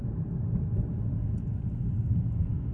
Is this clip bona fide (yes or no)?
yes